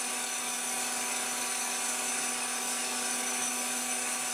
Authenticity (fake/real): fake